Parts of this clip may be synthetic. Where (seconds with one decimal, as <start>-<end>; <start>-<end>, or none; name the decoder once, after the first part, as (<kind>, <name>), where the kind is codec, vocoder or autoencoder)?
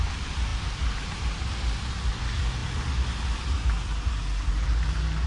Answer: none